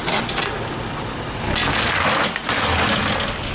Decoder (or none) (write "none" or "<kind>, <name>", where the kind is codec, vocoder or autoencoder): none